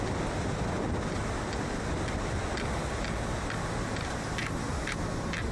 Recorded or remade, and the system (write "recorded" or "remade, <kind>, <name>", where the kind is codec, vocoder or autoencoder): recorded